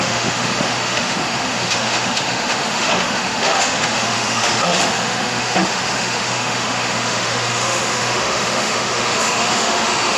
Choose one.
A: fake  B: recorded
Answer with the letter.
A